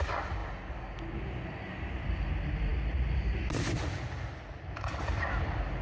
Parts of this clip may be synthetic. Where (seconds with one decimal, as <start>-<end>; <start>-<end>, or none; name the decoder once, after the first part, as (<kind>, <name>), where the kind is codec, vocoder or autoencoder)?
none